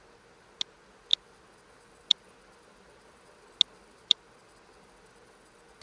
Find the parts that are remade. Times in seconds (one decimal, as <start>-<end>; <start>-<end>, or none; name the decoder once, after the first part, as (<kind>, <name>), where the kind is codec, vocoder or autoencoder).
none